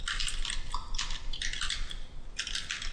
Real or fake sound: real